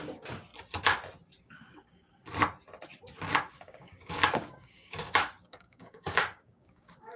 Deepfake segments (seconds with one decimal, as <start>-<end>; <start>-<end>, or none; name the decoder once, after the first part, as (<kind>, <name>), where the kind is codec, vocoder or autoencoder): 0.0-0.5 (codec, DAC); 1.4-2.2; 3.5-7.2